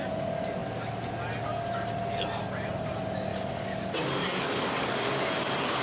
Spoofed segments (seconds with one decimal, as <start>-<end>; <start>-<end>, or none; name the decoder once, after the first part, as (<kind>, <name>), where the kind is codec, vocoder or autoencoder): 3.3-3.8 (codec, DAC); 4.2-5.1